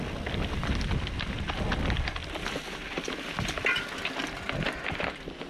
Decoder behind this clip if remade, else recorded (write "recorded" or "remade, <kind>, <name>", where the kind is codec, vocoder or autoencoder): recorded